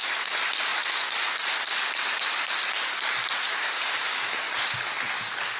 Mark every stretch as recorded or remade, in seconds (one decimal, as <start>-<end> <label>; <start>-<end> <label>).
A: 0.0-3.5 recorded; 3.5-4.6 remade; 4.6-5.6 recorded